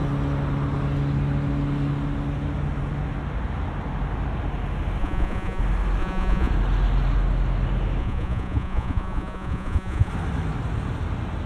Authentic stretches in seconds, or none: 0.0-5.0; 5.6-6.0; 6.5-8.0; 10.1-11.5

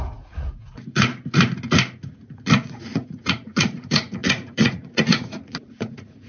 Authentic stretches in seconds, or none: 1.1-2.1